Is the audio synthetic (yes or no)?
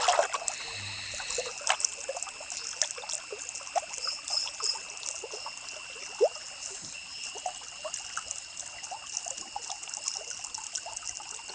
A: no